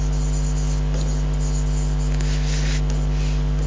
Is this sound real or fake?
real